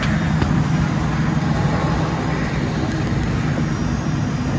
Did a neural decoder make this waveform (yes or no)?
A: no